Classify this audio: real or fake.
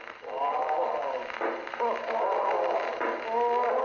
real